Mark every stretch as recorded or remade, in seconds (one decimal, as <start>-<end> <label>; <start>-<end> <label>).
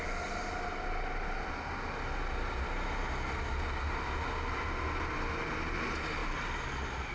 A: 0.0-7.1 recorded